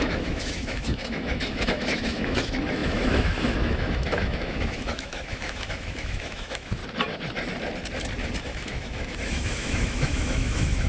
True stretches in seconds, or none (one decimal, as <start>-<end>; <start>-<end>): 6.8-8.4